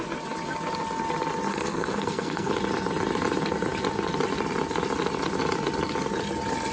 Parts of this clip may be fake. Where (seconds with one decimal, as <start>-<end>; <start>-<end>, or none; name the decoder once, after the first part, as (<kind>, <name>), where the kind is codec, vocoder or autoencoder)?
1.5-2.5 (codec, SNAC)